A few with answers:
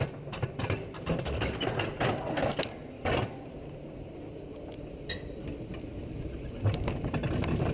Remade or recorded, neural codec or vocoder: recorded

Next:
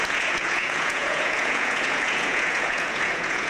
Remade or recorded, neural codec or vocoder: remade, vocoder, Vocos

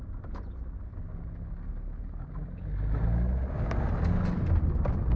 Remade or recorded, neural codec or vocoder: recorded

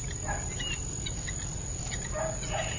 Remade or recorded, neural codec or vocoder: recorded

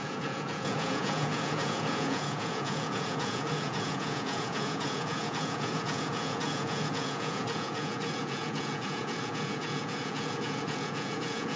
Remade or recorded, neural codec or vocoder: remade, vocoder, Vocos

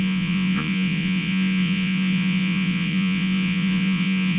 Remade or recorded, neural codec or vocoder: remade, vocoder, Vocos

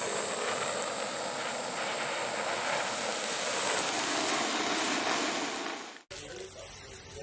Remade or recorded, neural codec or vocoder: recorded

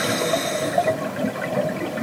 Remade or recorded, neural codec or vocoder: recorded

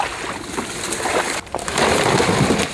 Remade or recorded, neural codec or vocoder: recorded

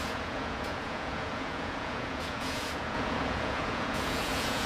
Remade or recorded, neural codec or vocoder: remade, vocoder, Vocos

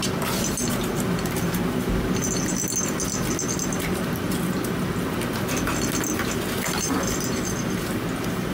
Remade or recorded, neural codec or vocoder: recorded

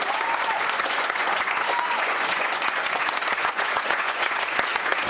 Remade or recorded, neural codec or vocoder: remade, vocoder, Vocos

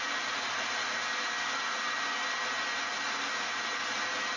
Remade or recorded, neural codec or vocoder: recorded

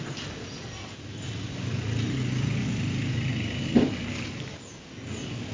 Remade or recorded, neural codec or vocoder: recorded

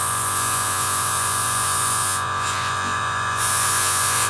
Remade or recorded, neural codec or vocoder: remade, vocoder, Vocos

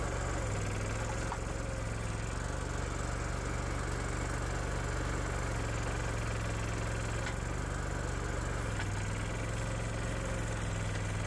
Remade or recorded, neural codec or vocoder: recorded